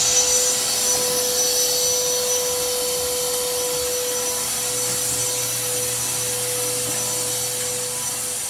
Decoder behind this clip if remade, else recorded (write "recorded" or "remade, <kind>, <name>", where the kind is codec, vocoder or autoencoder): recorded